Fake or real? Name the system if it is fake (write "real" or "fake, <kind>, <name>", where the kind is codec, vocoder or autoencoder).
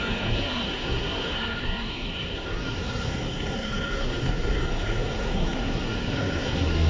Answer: fake, codec, SNAC